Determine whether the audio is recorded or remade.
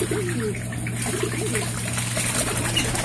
recorded